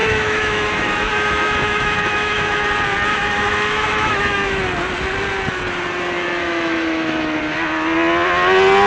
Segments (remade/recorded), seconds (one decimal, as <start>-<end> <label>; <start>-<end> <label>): 0.0-2.7 remade; 2.7-3.1 recorded; 3.1-4.6 remade; 4.6-6.4 recorded; 6.4-7.4 remade; 7.4-8.9 recorded